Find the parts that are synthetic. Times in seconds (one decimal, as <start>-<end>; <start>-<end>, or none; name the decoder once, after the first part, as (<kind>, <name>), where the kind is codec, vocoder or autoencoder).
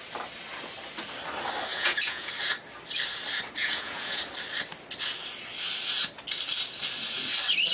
1.7-2.3 (vocoder, Vocos); 3.6-4.2